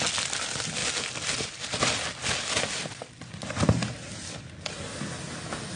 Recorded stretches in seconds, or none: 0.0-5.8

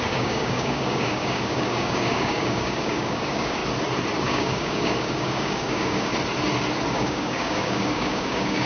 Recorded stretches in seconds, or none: 3.6-4.2; 6.1-6.9

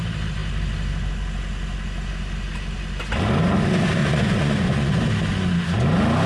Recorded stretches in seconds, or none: 0.0-4.0; 5.0-6.3

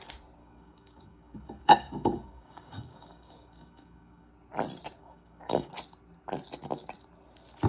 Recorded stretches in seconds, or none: 0.0-0.4; 4.3-5.0; 5.7-7.7

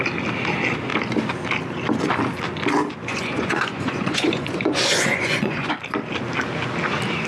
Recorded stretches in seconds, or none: 0.0-3.1; 5.7-7.3

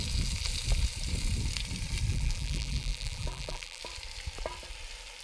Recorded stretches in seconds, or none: 0.0-2.1; 3.8-5.2